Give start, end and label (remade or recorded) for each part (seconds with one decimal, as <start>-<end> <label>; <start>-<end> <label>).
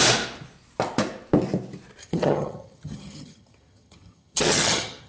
0.0-2.0 recorded; 2.0-5.1 remade